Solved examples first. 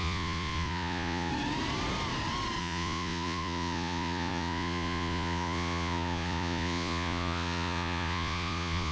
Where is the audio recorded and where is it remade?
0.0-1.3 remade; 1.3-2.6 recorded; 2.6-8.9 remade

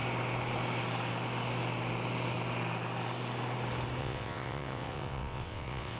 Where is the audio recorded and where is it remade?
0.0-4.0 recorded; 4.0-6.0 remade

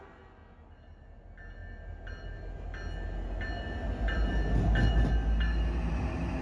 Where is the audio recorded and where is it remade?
0.0-6.4 recorded

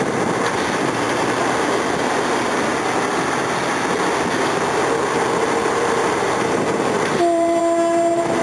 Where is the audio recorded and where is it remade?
0.0-5.6 recorded; 5.6-7.6 remade; 7.6-8.4 recorded